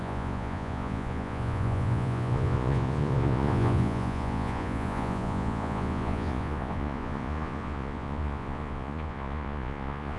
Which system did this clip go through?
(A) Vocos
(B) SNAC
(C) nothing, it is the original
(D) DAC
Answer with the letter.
A